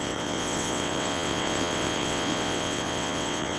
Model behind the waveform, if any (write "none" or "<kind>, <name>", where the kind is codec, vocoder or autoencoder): vocoder, WaveNeXt